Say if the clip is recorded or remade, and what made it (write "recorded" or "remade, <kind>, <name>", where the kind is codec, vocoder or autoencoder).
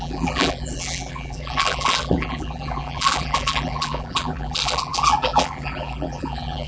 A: remade, vocoder, BigVGAN v2